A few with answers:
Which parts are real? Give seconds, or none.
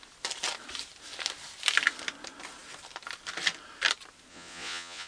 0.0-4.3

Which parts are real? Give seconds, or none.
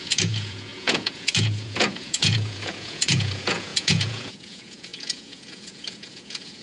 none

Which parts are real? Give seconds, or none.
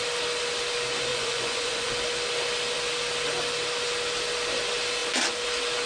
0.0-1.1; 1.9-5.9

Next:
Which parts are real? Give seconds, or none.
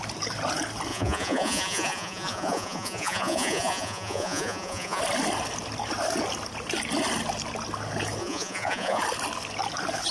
0.0-0.9; 5.0-8.2; 9.0-10.1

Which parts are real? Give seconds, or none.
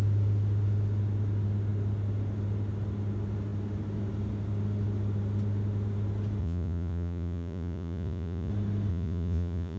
0.0-6.4; 8.5-8.9